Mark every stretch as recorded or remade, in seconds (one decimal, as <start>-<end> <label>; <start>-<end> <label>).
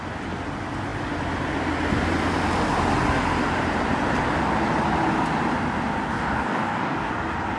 0.0-6.1 recorded; 6.1-7.1 remade; 7.1-7.6 recorded